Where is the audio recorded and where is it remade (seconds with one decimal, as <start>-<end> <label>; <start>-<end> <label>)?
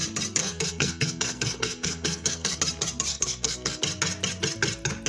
0.0-0.4 recorded; 0.4-2.6 remade; 2.6-3.1 recorded; 3.1-3.8 remade; 3.8-5.1 recorded